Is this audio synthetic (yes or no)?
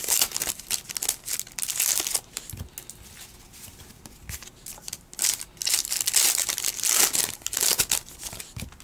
no